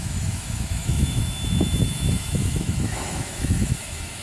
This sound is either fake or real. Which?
fake